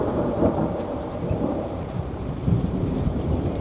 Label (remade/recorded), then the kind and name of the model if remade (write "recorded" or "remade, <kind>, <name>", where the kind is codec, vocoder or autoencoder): remade, vocoder, BigVGAN v2